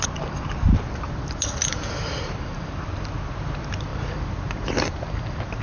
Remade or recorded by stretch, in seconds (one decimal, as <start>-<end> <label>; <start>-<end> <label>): 0.0-1.6 recorded; 1.6-3.3 remade; 3.3-5.6 recorded